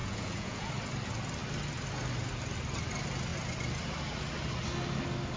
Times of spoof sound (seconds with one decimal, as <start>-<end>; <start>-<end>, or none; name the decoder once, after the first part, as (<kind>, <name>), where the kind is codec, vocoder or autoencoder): 0.0-0.7 (vocoder, Vocos)